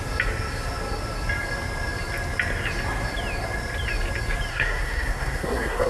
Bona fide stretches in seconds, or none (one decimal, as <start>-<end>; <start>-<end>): 0.0-4.5